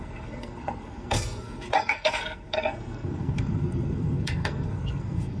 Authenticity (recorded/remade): remade